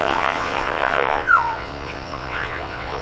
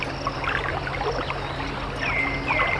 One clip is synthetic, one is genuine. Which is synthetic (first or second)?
first